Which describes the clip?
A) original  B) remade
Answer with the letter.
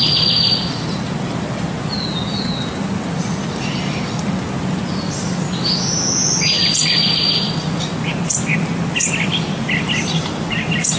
A